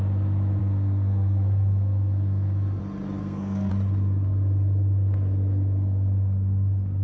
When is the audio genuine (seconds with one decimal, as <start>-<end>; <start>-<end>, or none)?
0.0-0.6; 2.8-3.2; 3.7-7.0